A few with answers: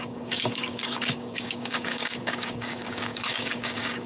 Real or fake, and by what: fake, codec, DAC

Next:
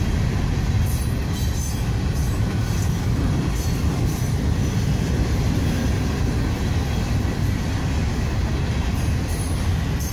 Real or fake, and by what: real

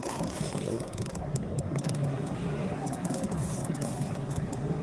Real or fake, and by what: fake, codec, SNAC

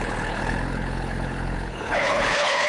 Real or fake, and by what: fake, codec, HILCodec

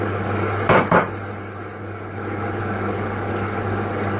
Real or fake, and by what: fake, codec, DAC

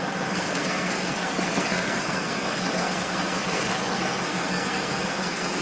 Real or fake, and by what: fake, codec, SNAC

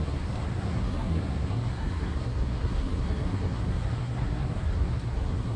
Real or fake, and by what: fake, codec, SNAC